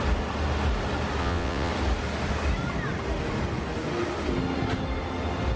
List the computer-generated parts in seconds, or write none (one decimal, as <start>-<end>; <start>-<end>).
1.2-1.7